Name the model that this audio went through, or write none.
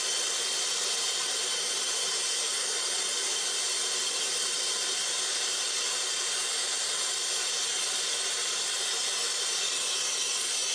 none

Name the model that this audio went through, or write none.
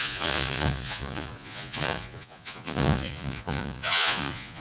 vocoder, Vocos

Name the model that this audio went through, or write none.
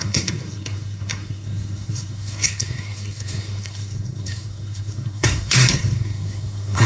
codec, SNAC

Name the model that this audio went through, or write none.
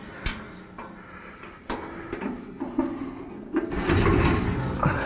none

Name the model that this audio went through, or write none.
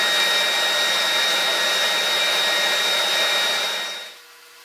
none